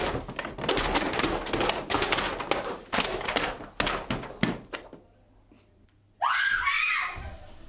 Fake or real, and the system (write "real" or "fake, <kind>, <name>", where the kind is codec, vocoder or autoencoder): real